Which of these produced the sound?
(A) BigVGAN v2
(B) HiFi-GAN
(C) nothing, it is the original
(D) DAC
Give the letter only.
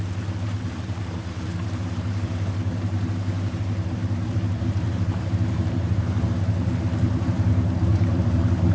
A